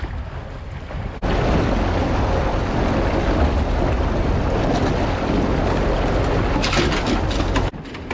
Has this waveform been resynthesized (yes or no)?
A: no